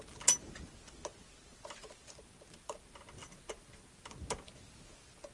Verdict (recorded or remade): recorded